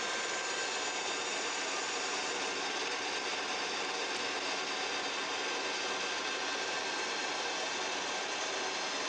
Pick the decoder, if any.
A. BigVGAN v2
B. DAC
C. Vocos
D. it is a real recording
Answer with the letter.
D